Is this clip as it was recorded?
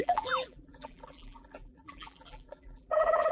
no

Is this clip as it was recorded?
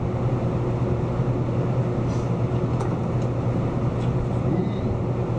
yes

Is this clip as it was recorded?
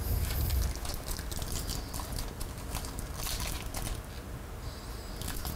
yes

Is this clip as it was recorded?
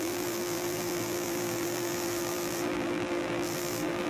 no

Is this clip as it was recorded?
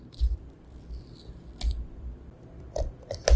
no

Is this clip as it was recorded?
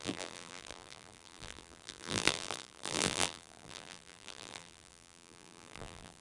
no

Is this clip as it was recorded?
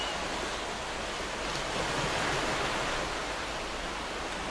yes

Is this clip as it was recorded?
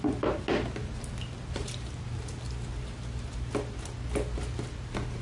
yes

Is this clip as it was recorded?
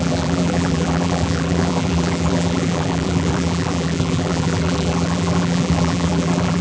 no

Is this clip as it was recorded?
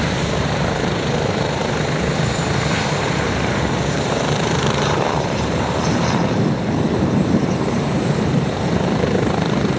no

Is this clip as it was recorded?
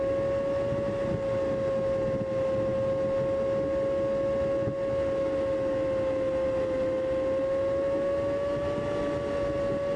yes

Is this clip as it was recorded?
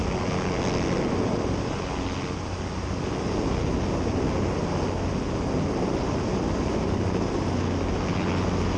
yes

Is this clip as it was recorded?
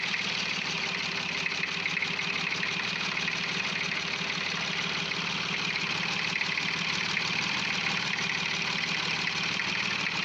yes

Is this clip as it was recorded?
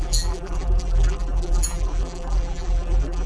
no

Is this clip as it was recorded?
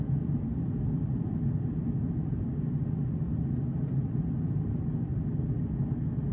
yes